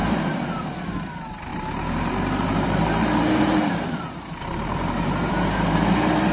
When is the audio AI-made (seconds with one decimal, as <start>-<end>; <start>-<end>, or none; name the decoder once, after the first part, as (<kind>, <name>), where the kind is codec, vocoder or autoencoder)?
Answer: 0.0-0.6 (vocoder, BigVGAN v2); 1.5-5.3

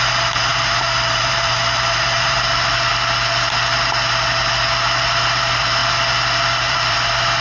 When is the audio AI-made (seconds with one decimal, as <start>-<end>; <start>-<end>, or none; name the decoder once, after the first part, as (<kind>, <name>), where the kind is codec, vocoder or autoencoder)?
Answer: 0.0-2.9 (vocoder, BigVGAN v2); 5.0-5.8; 6.6-7.4

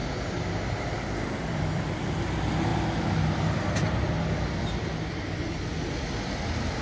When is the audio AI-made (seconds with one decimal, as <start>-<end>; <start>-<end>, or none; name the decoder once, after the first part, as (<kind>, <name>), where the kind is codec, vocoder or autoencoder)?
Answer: 0.0-1.8 (vocoder, BigVGAN v2)

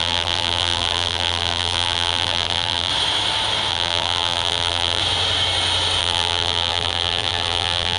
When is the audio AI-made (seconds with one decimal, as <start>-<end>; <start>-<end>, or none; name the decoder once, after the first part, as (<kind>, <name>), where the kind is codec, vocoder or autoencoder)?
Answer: 0.0-2.9 (vocoder, BigVGAN v2); 3.7-5.0; 6.0-8.0

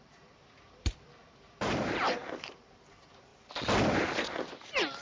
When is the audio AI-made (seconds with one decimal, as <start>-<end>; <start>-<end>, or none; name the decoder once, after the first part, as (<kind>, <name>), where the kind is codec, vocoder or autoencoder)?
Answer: 0.0-3.3 (vocoder, BigVGAN v2); 4.5-5.0

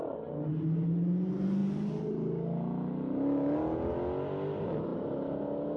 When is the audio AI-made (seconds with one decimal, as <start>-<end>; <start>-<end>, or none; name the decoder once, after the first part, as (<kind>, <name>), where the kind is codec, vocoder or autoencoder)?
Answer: none

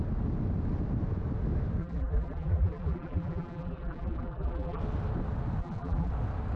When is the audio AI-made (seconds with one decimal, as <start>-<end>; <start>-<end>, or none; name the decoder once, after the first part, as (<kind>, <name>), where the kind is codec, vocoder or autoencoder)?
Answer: 1.8-4.8 (vocoder, BigVGAN v2); 5.6-6.1